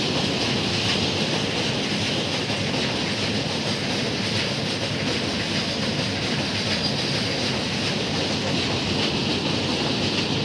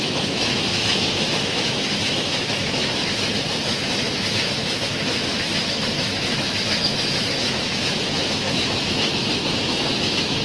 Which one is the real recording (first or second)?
first